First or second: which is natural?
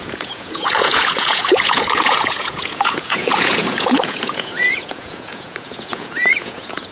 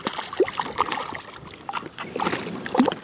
second